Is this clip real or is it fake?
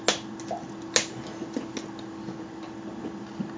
real